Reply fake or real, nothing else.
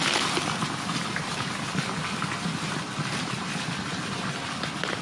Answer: real